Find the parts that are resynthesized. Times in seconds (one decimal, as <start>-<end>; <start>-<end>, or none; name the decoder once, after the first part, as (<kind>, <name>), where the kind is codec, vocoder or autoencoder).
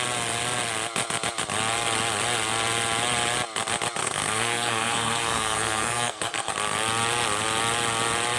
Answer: 4.0-6.5 (codec, SNAC)